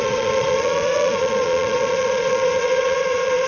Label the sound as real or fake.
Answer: fake